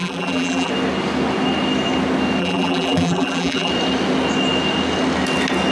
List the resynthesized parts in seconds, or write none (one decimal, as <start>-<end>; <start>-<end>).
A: 0.0-0.7; 2.4-3.7